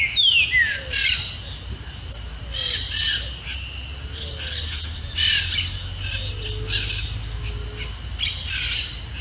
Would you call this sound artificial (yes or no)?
no